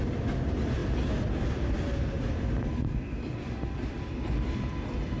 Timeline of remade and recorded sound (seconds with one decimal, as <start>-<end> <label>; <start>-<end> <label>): 0.0-0.8 remade; 0.8-3.9 recorded; 3.9-5.2 remade